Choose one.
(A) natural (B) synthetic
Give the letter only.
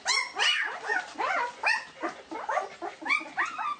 A